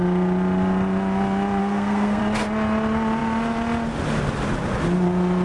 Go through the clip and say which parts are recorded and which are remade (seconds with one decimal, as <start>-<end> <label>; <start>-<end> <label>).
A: 0.0-1.6 recorded; 1.6-2.2 remade; 2.2-5.4 recorded